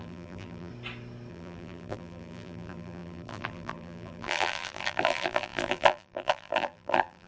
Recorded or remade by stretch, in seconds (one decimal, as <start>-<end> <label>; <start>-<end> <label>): 0.0-0.7 remade; 0.7-1.3 recorded; 1.3-7.3 remade

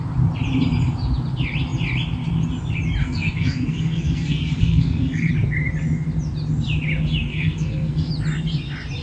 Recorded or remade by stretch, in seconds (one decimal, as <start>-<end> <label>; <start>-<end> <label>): 0.0-3.0 recorded; 3.0-5.3 remade; 5.3-7.3 recorded; 7.3-8.1 remade; 8.1-9.0 recorded